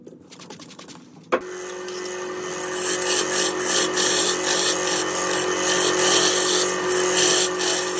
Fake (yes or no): no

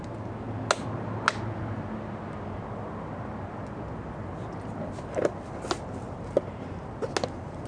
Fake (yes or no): no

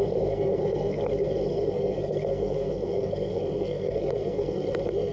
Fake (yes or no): yes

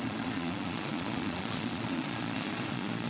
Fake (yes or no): yes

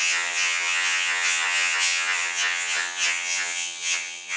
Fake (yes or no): yes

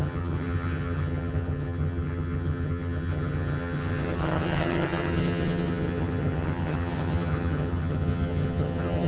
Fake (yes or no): yes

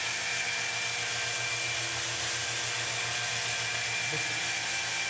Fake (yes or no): no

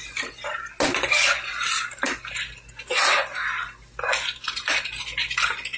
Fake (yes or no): no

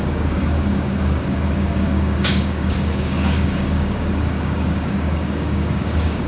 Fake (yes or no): yes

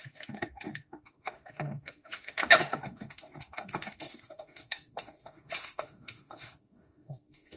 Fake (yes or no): yes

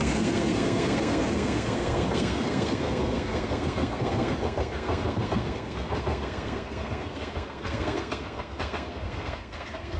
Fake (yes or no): yes